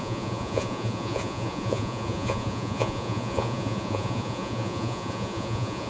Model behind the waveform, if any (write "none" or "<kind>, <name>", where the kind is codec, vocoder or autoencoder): vocoder, Vocos